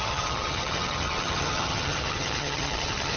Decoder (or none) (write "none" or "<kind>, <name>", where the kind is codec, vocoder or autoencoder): vocoder, HiFi-GAN